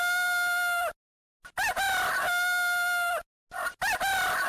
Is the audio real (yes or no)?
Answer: yes